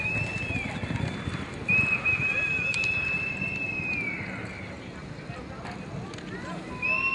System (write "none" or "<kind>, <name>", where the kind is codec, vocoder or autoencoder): none